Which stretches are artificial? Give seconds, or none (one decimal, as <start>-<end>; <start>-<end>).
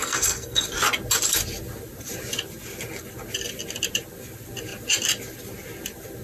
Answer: 0.0-0.6